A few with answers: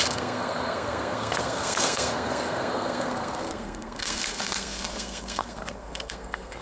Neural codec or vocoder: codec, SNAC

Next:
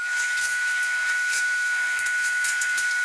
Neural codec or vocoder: codec, SNAC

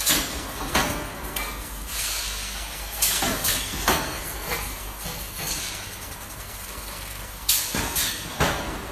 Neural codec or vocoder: codec, SNAC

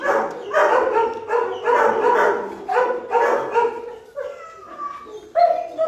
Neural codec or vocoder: none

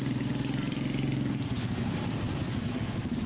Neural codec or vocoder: none